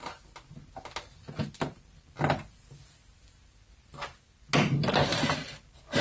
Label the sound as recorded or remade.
recorded